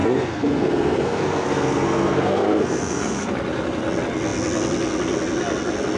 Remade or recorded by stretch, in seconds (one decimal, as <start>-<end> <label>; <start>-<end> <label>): 0.0-3.3 remade; 3.3-6.0 recorded